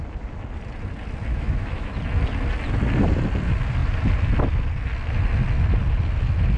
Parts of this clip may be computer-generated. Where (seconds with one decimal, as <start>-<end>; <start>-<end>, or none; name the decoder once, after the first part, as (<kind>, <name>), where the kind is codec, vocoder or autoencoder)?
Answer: 1.3-1.9 (autoencoder, DAC-VAE)